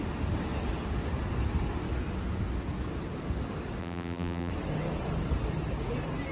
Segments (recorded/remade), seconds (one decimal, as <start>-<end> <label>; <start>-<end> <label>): 0.0-3.8 recorded; 3.8-4.5 remade; 4.5-6.3 recorded